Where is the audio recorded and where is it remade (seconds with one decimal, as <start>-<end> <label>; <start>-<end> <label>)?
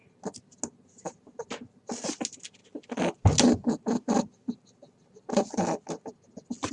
0.0-6.7 recorded